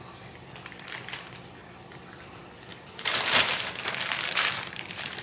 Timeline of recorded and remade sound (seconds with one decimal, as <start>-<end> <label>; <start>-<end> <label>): 0.0-2.7 recorded; 2.7-5.2 remade